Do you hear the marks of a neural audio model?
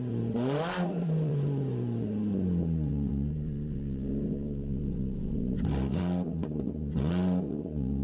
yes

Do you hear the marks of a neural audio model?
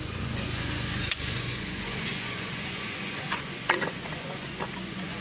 yes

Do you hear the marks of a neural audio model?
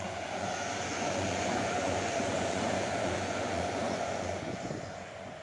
yes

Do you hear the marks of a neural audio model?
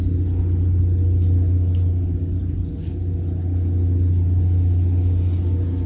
no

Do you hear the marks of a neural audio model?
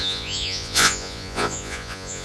yes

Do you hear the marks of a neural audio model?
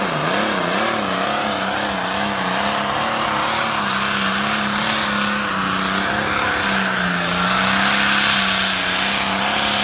no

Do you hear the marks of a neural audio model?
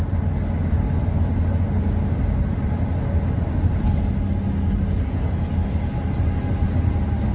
no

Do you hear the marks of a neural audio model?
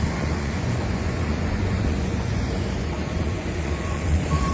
yes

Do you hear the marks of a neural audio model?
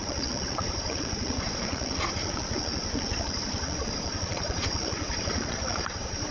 yes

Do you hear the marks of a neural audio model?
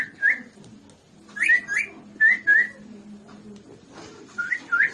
no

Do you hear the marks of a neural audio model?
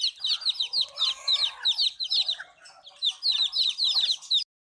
no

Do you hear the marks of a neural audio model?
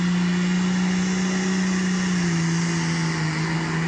no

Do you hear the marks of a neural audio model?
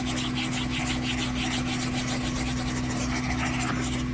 no